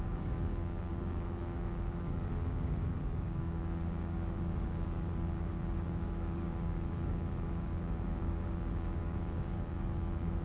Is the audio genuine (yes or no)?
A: no